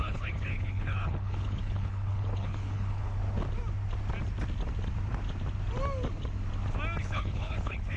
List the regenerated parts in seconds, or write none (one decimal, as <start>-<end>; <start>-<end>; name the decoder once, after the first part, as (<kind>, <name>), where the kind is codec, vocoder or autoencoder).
0.0-3.2 (codec, HILCodec); 7.0-8.0